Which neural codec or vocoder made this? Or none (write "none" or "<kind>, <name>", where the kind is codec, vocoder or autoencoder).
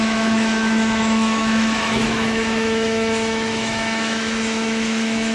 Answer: autoencoder, DAC-VAE